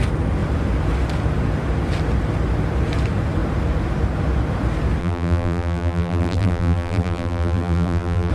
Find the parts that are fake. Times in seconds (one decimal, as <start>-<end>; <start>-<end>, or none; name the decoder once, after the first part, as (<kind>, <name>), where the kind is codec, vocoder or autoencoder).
5.0-8.3 (vocoder, BigVGAN v2)